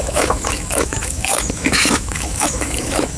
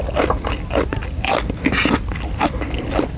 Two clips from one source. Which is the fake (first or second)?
first